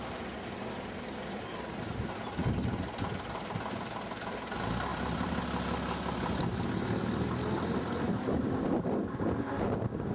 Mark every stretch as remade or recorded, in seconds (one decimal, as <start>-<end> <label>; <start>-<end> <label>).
0.0-4.9 recorded; 4.9-5.4 remade; 5.4-10.1 recorded